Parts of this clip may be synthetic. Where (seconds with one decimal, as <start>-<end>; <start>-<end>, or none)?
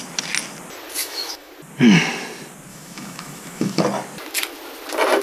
1.0-1.5; 2.7-3.8